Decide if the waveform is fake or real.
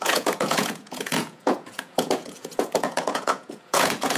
fake